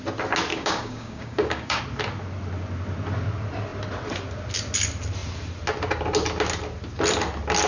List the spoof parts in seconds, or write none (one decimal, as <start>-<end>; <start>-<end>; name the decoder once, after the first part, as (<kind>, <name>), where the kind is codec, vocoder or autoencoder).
0.5-1.8 (codec, DAC)